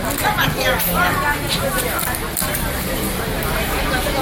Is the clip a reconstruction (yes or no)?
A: no